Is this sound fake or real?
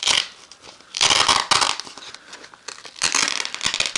real